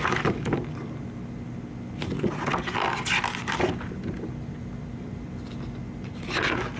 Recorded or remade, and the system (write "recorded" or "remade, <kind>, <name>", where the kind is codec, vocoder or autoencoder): recorded